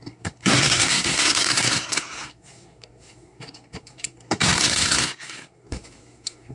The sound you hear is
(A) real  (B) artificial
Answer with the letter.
B